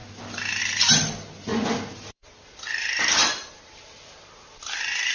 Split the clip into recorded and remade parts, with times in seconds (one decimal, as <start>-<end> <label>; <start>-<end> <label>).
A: 0.0-0.6 recorded; 0.6-1.5 remade; 1.5-4.6 recorded; 4.6-5.1 remade